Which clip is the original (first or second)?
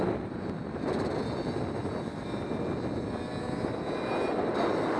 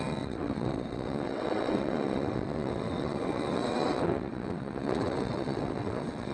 first